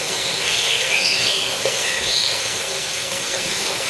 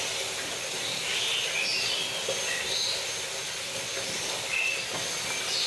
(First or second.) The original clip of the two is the second